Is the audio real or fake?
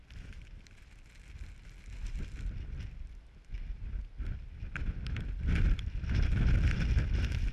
real